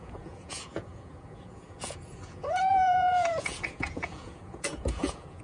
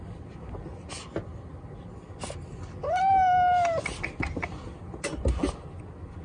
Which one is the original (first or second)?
second